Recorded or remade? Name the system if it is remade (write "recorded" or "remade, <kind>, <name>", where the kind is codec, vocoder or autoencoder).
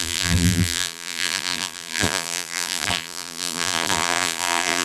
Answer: remade, vocoder, BigVGAN v2